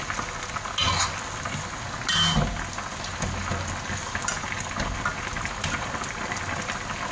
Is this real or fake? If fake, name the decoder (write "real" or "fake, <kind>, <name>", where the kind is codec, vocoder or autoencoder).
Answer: real